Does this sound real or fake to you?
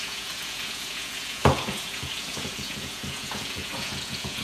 fake